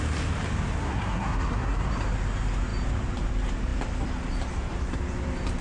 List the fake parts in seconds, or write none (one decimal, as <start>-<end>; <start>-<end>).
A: 0.8-1.9